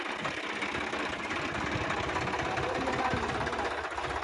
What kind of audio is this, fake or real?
real